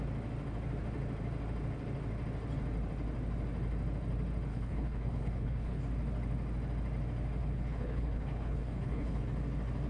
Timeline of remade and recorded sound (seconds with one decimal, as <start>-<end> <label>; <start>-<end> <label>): 0.0-4.5 recorded; 4.5-5.8 remade; 5.8-7.4 recorded; 7.4-9.2 remade; 9.2-9.9 recorded